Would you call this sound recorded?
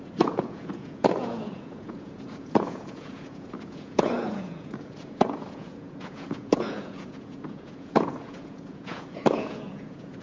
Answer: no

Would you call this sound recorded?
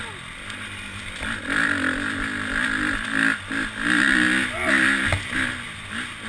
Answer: yes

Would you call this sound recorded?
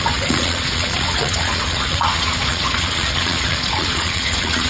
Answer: no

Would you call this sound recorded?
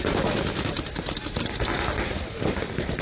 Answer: yes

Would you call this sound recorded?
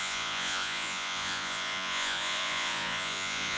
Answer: no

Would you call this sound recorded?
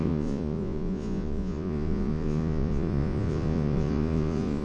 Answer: no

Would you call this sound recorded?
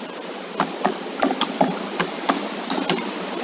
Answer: yes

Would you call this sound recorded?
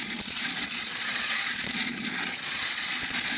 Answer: no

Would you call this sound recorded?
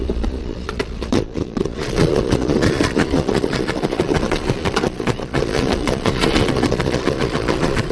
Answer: no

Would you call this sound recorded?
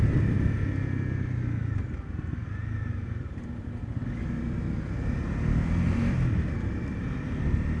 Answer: yes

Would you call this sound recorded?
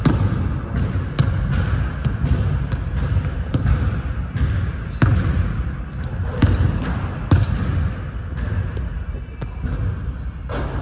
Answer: yes